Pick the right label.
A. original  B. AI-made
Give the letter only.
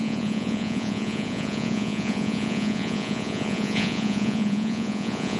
B